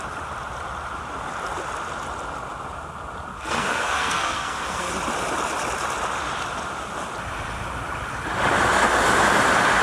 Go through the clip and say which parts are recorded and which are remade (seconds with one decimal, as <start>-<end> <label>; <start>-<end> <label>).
0.0-3.3 recorded; 3.3-4.9 remade; 4.9-9.8 recorded